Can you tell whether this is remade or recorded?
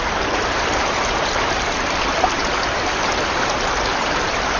recorded